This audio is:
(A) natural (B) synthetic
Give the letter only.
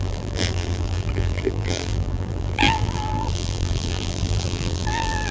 B